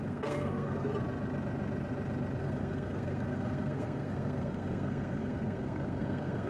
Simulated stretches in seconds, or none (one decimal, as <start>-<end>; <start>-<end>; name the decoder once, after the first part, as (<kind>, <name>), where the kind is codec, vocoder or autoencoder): 0.0-0.9 (codec, SNAC); 2.4-6.5